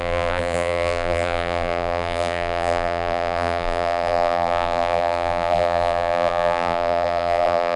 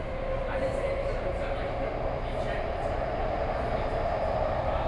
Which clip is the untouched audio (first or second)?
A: second